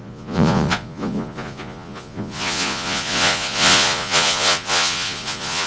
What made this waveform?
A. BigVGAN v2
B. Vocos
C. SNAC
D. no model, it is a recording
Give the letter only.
B